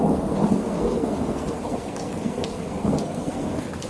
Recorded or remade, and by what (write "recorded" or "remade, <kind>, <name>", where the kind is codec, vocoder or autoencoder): remade, codec, SNAC